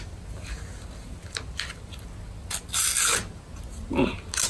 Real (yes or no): yes